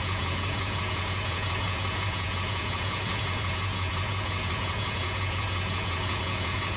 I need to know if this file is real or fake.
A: fake